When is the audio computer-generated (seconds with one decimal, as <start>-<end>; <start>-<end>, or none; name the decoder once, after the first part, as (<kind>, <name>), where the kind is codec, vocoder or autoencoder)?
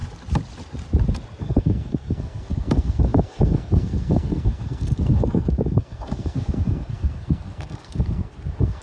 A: 1.4-8.8 (codec, SNAC)